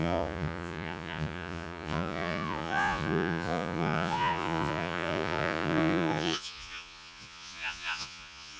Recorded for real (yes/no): no